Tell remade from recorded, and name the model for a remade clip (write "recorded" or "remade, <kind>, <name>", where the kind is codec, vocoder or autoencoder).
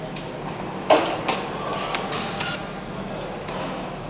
recorded